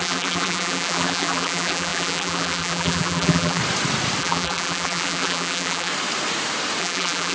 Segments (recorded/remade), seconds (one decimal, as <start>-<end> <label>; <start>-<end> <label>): 0.0-3.6 remade; 3.6-4.2 recorded; 4.2-5.9 remade; 5.9-6.8 recorded; 6.8-7.3 remade